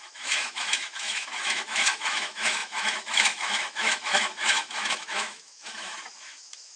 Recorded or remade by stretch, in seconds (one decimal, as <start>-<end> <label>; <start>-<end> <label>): 0.0-6.8 remade